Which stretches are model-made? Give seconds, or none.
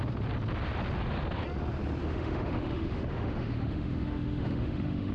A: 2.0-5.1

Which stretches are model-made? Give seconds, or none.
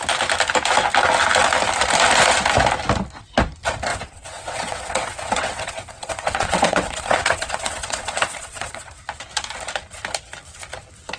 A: 3.9-8.9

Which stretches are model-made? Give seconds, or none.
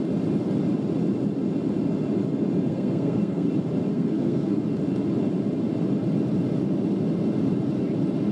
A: 2.7-3.5; 3.9-4.6